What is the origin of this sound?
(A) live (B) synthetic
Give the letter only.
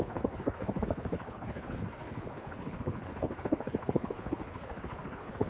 B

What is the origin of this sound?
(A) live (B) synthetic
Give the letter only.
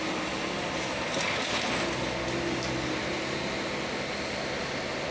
A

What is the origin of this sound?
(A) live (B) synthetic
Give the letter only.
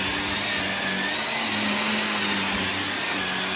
A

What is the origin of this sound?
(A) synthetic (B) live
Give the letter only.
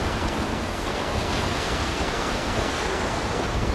A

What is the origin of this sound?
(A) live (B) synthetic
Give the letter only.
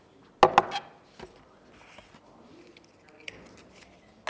A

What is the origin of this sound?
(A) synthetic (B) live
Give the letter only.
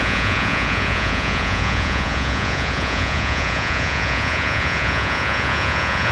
A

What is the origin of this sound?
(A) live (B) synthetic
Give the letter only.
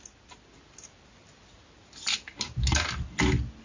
A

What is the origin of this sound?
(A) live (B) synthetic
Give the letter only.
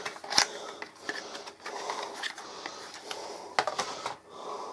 A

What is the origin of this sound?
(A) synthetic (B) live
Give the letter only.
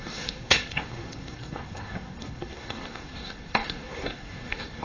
A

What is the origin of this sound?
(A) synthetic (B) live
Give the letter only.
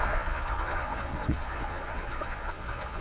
A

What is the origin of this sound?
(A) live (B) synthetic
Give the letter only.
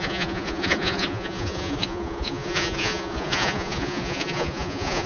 B